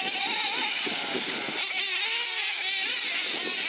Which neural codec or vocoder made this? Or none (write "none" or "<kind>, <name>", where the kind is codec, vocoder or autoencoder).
none